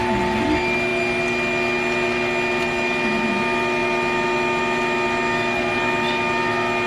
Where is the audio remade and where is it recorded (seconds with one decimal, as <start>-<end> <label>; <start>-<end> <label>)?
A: 0.0-6.9 recorded